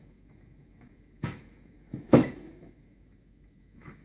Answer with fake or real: fake